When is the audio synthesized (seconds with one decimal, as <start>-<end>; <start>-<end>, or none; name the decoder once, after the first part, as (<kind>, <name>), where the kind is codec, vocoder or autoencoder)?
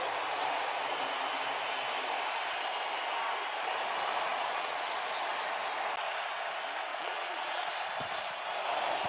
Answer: 4.3-4.9 (vocoder, Vocos); 6.9-7.7